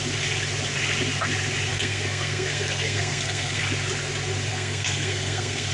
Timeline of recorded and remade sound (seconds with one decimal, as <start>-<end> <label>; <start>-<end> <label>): 0.0-1.7 recorded; 1.7-3.6 remade; 3.6-4.5 recorded; 4.5-5.7 remade

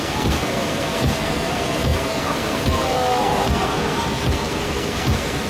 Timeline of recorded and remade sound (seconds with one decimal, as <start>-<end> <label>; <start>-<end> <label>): 0.0-5.5 remade

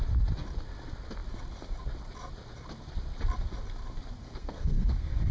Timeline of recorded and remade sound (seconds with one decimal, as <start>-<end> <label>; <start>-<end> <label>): 0.0-4.2 recorded; 4.2-5.3 remade